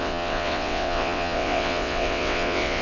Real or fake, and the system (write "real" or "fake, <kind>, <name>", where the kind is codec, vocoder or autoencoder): fake, vocoder, WaveNeXt